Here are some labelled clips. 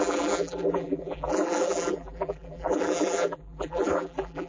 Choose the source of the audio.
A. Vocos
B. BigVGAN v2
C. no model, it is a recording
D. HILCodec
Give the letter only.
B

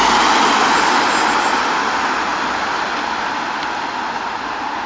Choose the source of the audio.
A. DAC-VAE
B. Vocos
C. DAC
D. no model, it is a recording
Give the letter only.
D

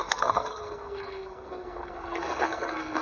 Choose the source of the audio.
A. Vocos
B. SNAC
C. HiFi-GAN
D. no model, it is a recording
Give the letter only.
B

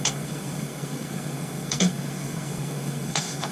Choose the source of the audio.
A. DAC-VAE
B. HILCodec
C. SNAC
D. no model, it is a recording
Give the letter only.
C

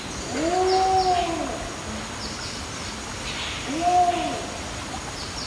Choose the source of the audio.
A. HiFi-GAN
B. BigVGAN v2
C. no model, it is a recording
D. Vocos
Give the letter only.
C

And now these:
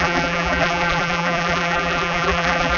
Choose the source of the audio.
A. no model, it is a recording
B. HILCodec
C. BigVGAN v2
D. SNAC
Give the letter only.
C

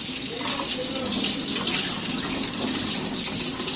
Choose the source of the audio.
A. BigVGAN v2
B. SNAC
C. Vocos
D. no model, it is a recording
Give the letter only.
D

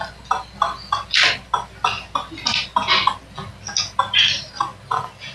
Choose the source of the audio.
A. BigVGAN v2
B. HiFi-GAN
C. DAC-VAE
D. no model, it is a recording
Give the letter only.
D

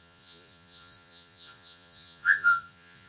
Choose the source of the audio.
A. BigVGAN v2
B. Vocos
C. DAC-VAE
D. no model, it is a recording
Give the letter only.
B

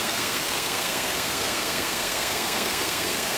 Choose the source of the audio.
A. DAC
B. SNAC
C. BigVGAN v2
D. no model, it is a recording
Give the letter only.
B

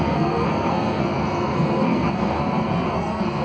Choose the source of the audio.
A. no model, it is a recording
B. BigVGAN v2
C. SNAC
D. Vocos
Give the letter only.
C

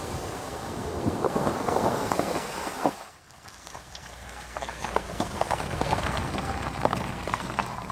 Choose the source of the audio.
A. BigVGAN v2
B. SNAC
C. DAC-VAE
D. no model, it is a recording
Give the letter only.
B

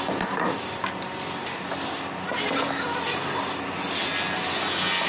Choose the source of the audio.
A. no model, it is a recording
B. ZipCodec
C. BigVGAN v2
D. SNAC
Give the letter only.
A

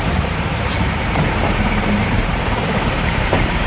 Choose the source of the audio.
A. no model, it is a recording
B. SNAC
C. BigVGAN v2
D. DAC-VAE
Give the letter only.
C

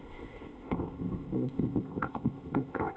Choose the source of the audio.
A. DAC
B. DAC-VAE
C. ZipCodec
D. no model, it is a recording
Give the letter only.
C